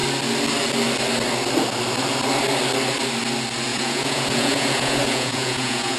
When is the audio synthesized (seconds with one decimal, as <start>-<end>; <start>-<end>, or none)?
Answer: 3.7-6.0